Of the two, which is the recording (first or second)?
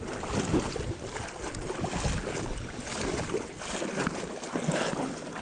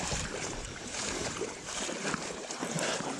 first